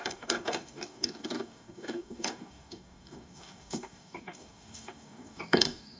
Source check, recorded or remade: remade